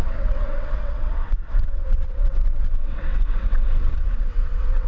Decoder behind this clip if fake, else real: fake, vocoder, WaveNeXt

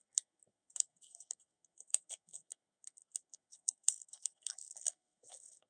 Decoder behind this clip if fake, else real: fake, codec, SNAC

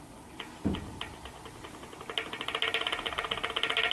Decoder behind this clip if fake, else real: real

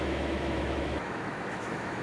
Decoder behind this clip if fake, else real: fake, autoencoder, DAC-VAE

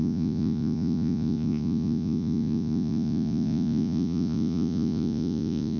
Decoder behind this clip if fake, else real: fake, vocoder, Vocos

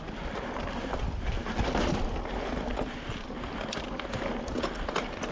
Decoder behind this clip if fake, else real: real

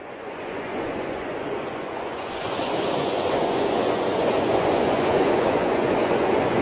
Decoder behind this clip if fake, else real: fake, vocoder, Vocos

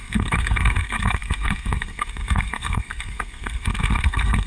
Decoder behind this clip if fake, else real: fake, codec, SNAC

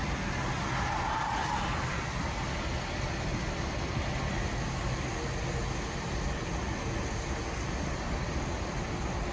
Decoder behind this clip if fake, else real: real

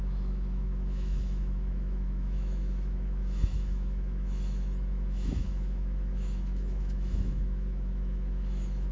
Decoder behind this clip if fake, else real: fake, autoencoder, DAC-VAE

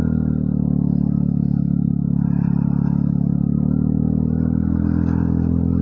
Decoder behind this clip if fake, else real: real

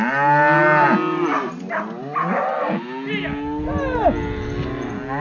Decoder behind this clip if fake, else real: real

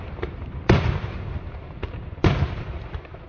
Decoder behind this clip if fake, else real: fake, vocoder, BigVGAN v2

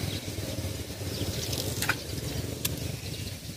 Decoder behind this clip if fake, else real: real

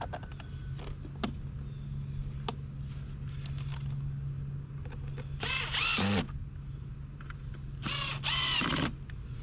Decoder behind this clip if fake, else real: real